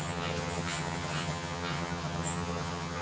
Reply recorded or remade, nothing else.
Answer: remade